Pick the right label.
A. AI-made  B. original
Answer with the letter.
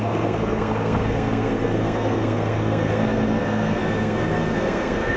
A